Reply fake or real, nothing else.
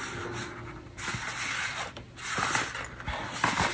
real